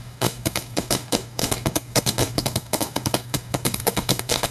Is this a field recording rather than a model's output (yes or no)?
no